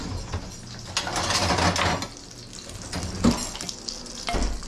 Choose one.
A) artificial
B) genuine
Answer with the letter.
B